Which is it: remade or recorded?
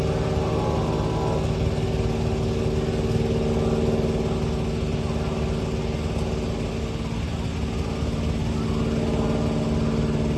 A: recorded